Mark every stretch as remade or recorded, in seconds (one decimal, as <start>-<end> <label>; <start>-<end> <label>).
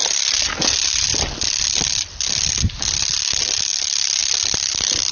0.0-5.1 recorded